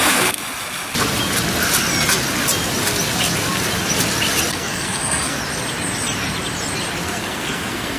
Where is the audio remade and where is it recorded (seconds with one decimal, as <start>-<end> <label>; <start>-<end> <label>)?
0.0-0.4 remade; 0.4-4.5 recorded; 4.5-5.4 remade; 5.4-7.0 recorded; 7.0-8.0 remade

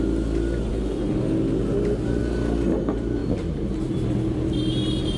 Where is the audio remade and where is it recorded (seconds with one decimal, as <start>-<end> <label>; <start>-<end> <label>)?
0.0-0.7 recorded; 0.7-1.2 remade; 1.2-5.2 recorded

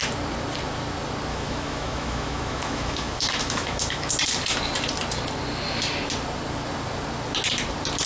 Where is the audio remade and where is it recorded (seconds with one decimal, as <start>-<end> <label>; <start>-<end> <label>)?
0.0-1.3 recorded; 1.3-4.1 remade; 4.1-8.1 recorded

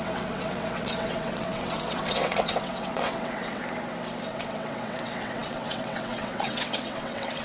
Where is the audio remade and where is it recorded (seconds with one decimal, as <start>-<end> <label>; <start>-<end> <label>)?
0.0-3.6 remade; 3.6-4.3 recorded; 4.3-7.4 remade

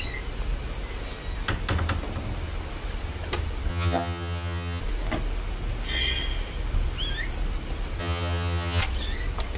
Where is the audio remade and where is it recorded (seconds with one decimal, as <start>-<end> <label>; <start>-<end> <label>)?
0.0-3.7 recorded; 3.7-4.8 remade; 4.8-8.0 recorded; 8.0-8.8 remade; 8.8-9.6 recorded